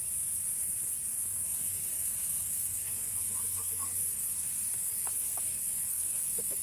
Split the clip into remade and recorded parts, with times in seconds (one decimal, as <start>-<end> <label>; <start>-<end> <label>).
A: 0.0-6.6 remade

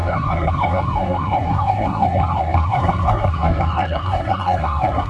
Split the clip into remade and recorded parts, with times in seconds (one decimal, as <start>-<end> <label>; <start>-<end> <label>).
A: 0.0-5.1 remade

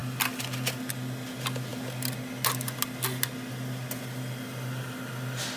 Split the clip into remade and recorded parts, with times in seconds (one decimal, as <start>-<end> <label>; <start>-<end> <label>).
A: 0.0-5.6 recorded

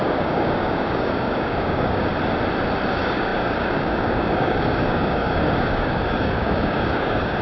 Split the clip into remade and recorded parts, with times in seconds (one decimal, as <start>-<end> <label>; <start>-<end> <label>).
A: 0.0-2.1 remade; 2.1-2.9 recorded; 2.9-7.4 remade